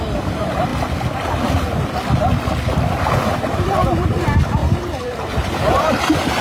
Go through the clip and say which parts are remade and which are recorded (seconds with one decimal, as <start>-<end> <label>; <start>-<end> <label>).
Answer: 0.0-0.7 remade; 0.7-2.9 recorded; 2.9-6.4 remade